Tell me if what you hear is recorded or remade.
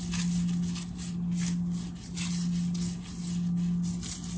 recorded